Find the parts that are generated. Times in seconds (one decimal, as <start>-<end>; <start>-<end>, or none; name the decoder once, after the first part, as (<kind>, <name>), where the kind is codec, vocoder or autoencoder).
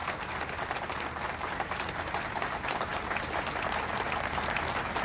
none